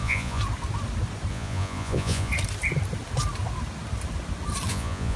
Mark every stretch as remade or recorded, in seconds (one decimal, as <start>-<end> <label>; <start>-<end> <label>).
0.0-0.4 remade; 0.4-1.3 recorded; 1.3-2.3 remade; 2.3-4.7 recorded; 4.7-5.2 remade